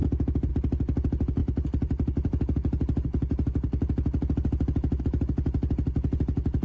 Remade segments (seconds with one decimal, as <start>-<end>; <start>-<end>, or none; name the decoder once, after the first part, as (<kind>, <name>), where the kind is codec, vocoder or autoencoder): 0.0-0.5 (vocoder, BigVGAN v2); 1.4-5.0